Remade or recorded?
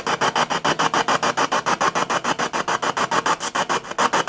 recorded